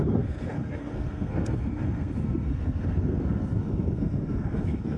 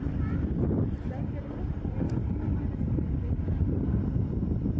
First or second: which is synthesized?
first